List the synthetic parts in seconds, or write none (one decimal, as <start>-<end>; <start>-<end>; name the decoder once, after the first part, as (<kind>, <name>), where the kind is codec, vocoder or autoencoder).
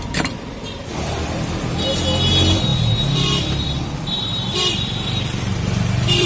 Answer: 0.0-0.9 (vocoder, BigVGAN v2); 2.3-6.3